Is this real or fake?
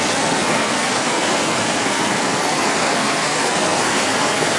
fake